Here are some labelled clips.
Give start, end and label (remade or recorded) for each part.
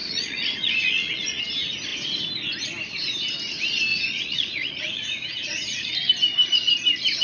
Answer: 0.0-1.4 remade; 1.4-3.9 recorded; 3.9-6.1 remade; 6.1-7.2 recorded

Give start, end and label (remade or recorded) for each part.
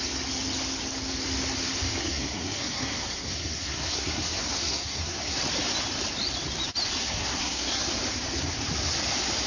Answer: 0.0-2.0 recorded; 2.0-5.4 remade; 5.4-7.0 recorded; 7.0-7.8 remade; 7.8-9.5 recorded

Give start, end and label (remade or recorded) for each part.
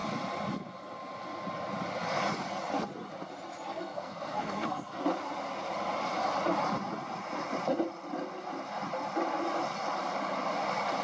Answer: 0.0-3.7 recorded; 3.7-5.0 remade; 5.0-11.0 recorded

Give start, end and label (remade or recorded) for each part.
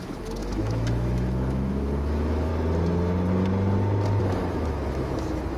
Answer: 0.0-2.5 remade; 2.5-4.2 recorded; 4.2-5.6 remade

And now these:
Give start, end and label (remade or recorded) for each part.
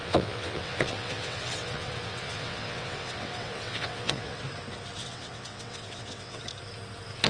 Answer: 0.0-4.4 remade; 4.4-5.0 recorded; 5.0-6.4 remade; 6.4-7.3 recorded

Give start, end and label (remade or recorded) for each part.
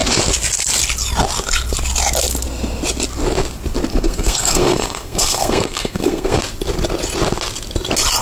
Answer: 0.0-3.9 recorded; 3.9-6.4 remade; 6.4-8.2 recorded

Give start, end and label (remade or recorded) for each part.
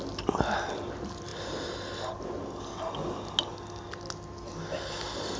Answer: 0.0-5.4 recorded